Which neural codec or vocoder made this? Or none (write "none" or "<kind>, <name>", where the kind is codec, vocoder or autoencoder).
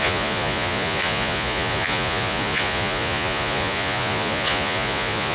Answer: vocoder, Vocos